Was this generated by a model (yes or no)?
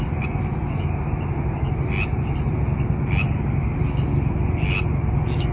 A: no